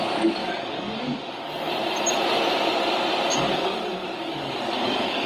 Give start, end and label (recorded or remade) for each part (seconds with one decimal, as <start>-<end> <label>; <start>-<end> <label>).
0.0-0.4 recorded; 0.4-1.7 remade; 1.7-3.3 recorded; 3.3-5.3 remade